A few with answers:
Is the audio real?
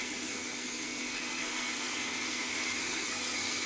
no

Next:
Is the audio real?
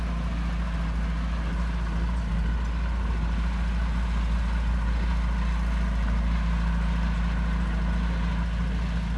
yes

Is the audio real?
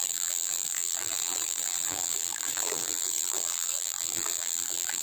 no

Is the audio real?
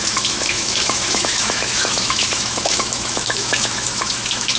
no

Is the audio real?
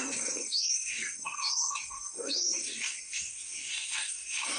no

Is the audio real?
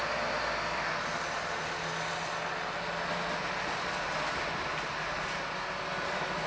yes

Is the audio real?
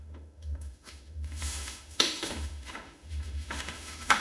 no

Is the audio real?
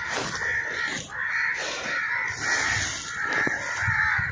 yes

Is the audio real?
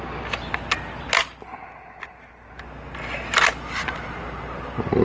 yes